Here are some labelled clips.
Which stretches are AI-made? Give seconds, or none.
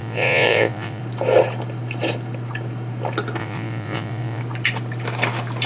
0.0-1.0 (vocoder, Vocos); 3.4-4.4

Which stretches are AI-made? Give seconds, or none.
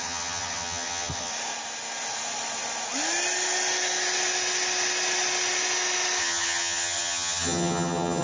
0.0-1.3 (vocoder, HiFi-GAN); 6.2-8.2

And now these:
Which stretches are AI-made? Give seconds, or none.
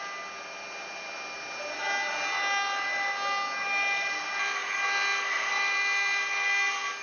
none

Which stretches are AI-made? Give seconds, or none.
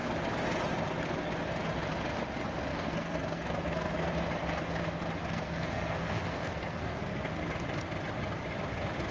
2.7-4.1 (codec, SNAC); 5.2-7.4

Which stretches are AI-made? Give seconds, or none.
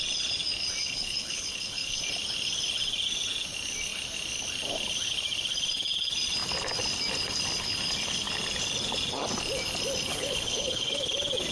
0.8-2.0 (codec, HILCodec); 10.1-10.9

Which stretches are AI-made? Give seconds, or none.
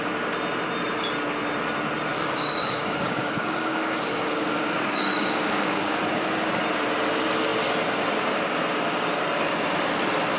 2.1-6.0 (codec, DAC)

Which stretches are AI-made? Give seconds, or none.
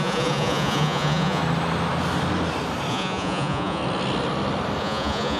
0.0-1.4 (vocoder, Vocos); 2.9-3.8; 4.8-5.4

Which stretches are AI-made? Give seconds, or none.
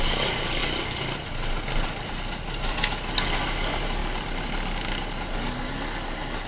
none